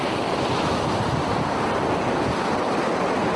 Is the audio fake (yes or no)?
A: no